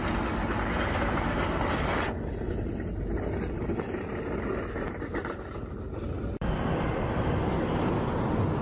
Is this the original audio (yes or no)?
yes